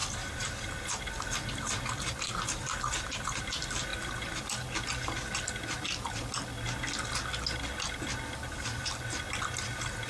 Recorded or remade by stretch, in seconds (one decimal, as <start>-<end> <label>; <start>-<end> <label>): 0.0-3.4 remade; 3.4-3.9 recorded; 3.9-4.4 remade; 4.4-10.1 recorded